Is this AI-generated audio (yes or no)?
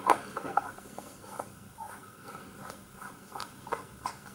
yes